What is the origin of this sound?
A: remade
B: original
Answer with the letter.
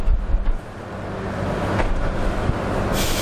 B